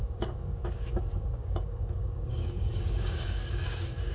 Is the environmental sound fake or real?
fake